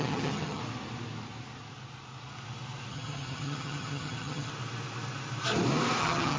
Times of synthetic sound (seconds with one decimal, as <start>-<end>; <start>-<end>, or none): 0.0-0.6; 2.9-4.5; 6.0-6.4

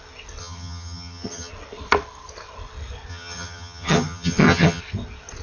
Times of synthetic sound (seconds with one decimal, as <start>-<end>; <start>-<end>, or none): 0.4-1.5; 3.1-4.8